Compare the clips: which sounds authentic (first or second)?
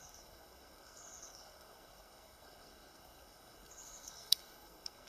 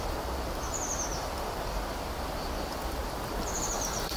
second